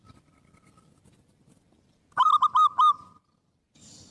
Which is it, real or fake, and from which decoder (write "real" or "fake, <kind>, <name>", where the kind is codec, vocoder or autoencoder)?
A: real